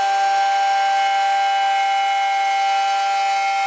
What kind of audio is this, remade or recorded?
recorded